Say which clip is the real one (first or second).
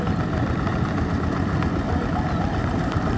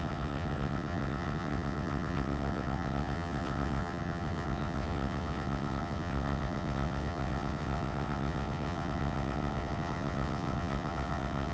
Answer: first